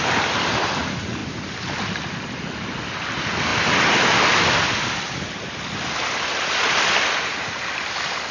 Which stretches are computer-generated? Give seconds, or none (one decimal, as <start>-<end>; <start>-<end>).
none